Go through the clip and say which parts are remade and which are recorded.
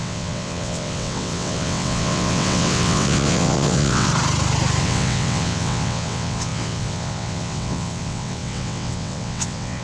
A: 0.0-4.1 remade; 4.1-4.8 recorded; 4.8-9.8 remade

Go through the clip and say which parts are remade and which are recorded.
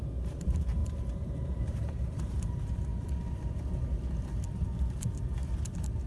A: 0.0-2.9 remade; 2.9-4.8 recorded; 4.8-6.1 remade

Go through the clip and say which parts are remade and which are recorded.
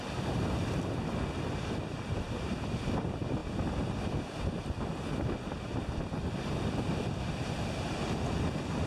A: 0.0-8.9 recorded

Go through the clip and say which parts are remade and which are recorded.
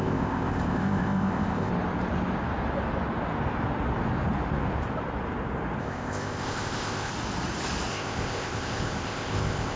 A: 0.0-1.7 remade; 1.7-5.8 recorded; 5.8-7.1 remade; 7.1-7.9 recorded; 7.9-9.8 remade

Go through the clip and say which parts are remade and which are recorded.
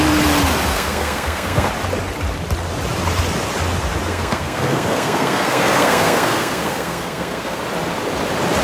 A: 0.0-0.7 recorded; 0.7-1.7 remade; 1.7-4.1 recorded; 4.1-7.6 remade; 7.6-8.6 recorded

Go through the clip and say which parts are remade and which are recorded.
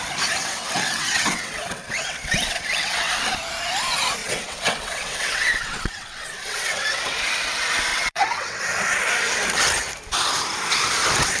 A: 0.0-0.4 recorded; 0.4-3.1 remade; 3.1-4.2 recorded; 4.2-7.2 remade; 7.2-7.9 recorded; 7.9-8.6 remade; 8.6-11.4 recorded